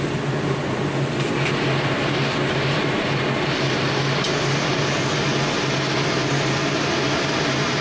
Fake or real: real